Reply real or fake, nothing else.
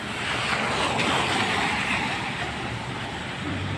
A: real